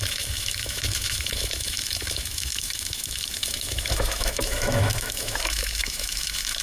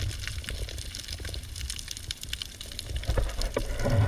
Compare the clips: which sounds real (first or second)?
second